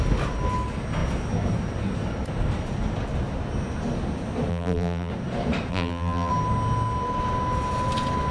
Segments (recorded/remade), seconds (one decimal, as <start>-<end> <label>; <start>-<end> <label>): 0.0-4.5 recorded; 4.5-5.1 remade; 5.1-5.7 recorded; 5.7-6.3 remade; 6.3-8.3 recorded